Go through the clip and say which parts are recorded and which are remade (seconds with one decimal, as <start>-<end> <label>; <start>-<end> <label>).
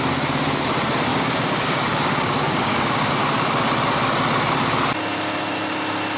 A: 0.0-1.1 recorded; 1.1-3.2 remade; 3.2-6.2 recorded